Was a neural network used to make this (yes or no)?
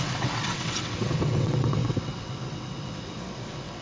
yes